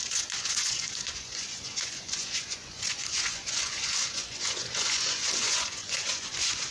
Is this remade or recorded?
remade